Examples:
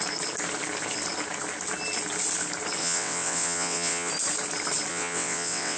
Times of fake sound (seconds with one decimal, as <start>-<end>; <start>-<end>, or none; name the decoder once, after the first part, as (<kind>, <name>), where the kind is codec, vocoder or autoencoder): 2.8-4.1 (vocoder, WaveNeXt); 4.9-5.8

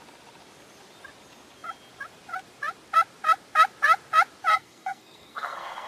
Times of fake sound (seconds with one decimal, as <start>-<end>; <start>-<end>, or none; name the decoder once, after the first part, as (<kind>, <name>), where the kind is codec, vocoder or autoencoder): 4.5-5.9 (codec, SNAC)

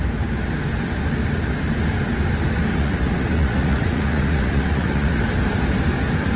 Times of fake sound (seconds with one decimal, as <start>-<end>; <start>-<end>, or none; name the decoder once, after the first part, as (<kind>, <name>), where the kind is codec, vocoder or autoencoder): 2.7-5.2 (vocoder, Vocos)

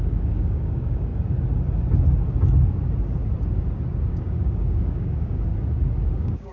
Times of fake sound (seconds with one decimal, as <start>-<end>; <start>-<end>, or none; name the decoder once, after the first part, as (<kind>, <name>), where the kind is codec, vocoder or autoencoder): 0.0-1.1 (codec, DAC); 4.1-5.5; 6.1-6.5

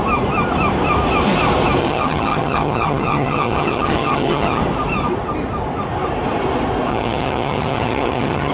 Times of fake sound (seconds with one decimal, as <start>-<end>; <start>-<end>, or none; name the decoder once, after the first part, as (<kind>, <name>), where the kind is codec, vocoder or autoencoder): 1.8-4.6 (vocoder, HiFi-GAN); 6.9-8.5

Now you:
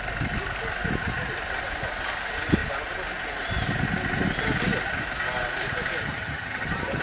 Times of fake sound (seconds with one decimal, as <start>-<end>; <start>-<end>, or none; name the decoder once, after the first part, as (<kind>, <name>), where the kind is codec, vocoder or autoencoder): 6.0-7.0 (vocoder, HiFi-GAN)

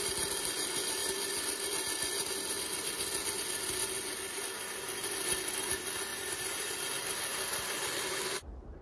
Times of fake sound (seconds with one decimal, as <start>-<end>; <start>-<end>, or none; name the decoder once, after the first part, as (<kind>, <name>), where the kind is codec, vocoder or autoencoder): 6.1-6.7 (vocoder, BigVGAN v2)